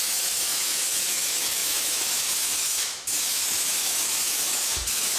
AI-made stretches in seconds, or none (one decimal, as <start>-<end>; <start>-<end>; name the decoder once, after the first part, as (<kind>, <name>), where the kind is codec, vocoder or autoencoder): 0.0-5.2 (autoencoder, DAC-VAE)